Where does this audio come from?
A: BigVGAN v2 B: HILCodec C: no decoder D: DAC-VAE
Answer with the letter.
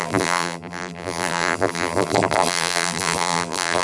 A